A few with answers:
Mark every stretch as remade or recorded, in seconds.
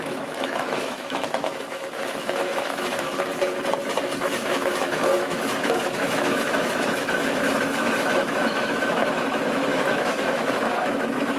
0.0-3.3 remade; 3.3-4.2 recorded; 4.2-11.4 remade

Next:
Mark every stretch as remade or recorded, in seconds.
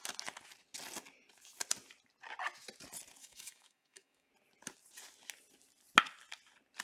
0.0-3.2 recorded; 3.2-4.3 remade; 4.3-6.8 recorded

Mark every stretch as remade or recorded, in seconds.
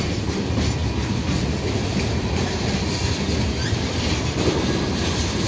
0.0-5.5 recorded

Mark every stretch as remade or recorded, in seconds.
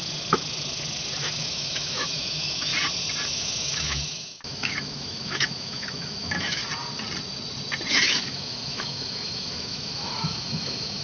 0.0-2.7 remade; 2.7-3.3 recorded; 3.3-6.6 remade; 6.6-7.9 recorded; 7.9-11.0 remade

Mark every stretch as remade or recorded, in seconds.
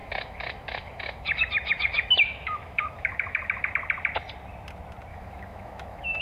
0.0-3.7 remade; 3.7-5.1 recorded; 5.1-6.2 remade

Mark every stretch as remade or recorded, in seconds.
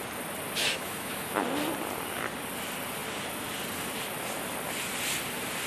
0.0-0.6 recorded; 0.6-1.4 remade; 1.4-5.7 recorded